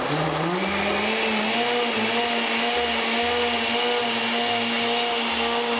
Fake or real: real